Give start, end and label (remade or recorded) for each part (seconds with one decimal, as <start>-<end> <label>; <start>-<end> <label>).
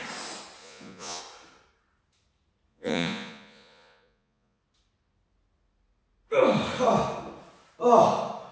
0.0-0.6 recorded; 0.6-1.2 remade; 1.2-2.7 recorded; 2.7-4.6 remade; 4.6-8.5 recorded